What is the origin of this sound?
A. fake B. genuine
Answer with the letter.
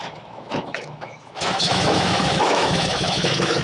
A